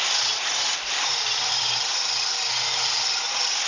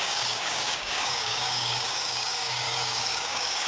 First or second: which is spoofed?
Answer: second